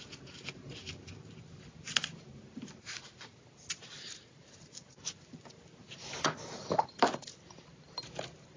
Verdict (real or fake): real